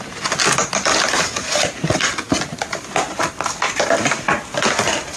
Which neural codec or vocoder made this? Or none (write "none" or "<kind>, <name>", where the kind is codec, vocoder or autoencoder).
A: none